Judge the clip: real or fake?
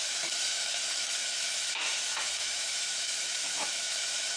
fake